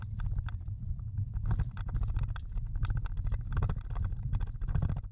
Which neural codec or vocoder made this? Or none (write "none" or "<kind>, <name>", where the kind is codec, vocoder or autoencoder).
none